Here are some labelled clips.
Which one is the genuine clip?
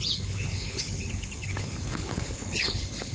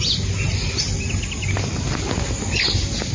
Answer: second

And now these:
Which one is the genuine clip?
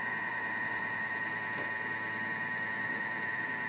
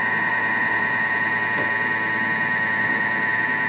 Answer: second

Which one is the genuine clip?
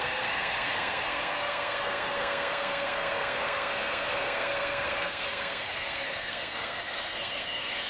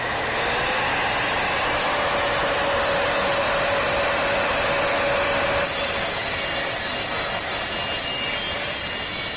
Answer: second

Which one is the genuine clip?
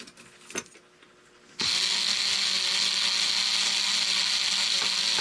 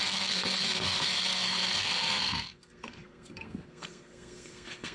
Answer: first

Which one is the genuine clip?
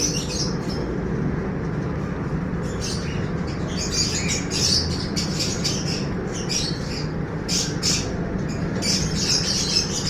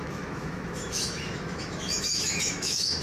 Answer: first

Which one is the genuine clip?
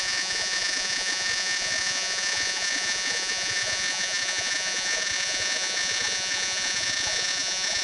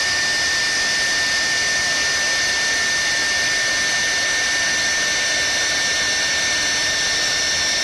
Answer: second